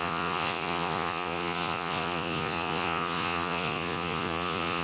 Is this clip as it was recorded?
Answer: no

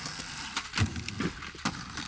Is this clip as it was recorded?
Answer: yes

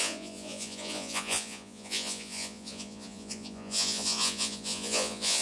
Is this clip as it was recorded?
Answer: no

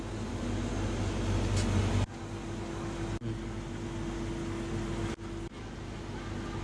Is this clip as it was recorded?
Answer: yes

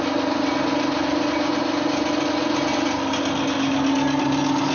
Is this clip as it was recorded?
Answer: yes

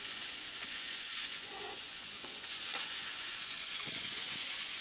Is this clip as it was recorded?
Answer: no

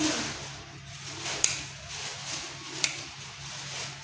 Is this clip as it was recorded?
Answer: yes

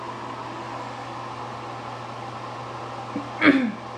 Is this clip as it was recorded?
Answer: yes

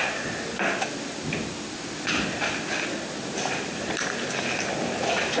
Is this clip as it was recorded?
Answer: yes